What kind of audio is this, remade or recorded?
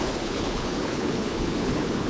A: remade